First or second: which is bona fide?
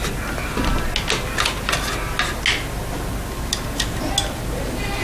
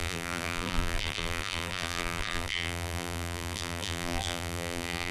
first